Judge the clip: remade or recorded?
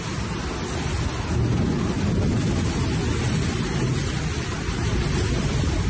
recorded